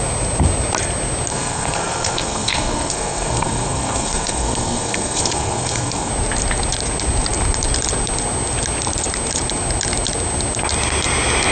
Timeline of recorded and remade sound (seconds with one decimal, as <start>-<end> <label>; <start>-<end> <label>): 0.0-1.3 recorded; 1.3-6.1 remade; 6.1-11.5 recorded